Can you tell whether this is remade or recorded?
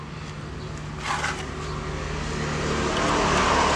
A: recorded